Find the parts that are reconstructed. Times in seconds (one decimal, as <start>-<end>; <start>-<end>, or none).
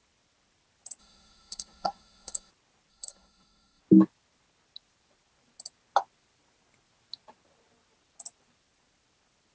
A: 1.0-2.5; 2.9-3.8